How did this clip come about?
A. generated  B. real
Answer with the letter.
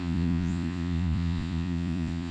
A